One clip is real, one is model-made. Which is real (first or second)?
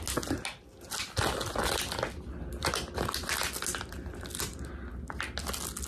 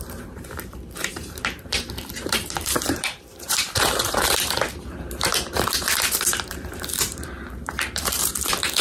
first